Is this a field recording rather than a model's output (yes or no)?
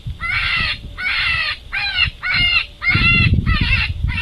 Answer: yes